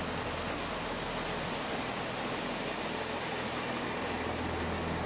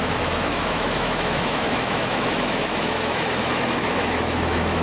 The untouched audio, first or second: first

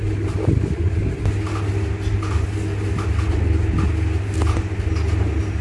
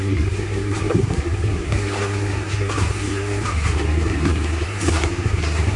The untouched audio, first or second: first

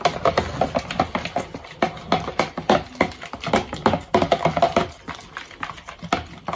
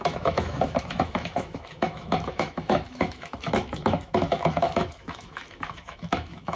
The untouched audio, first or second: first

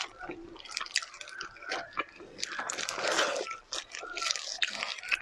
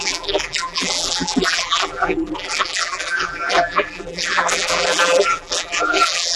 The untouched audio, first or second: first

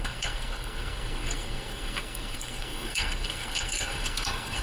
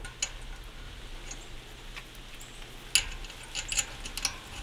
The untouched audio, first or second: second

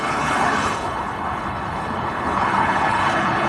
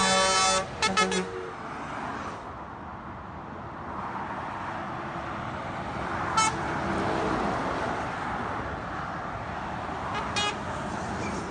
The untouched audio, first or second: second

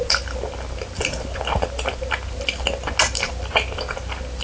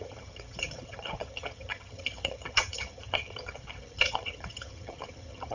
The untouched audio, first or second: first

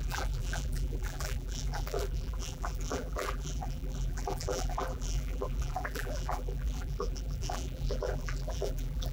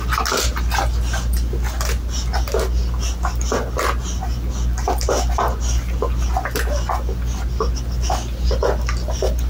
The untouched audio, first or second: second